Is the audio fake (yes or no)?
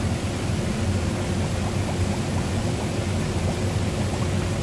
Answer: no